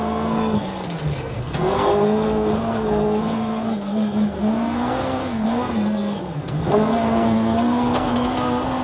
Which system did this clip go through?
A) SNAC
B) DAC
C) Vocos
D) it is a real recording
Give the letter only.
A